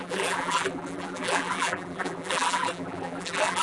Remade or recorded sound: remade